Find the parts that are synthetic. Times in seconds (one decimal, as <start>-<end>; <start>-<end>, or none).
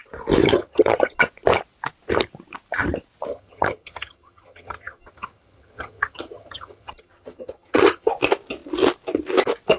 0.4-1.2; 3.3-8.1